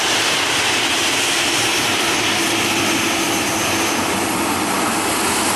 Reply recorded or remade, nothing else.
recorded